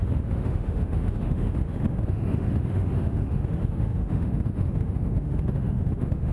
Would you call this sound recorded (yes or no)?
no